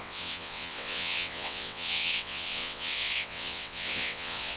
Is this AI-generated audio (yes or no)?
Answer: yes